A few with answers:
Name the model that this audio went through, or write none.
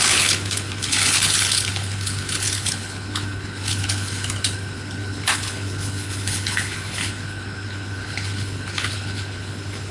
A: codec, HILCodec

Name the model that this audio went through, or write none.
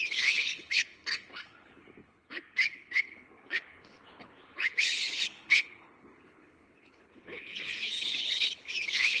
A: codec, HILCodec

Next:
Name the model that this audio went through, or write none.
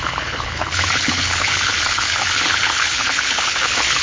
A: codec, HILCodec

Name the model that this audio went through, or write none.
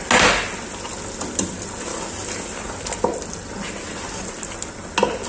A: none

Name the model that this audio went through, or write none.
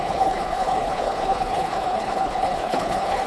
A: codec, HILCodec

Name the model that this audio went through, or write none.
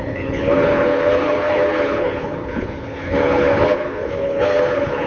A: codec, HILCodec